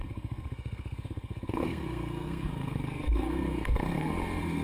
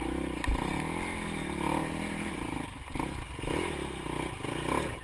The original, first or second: second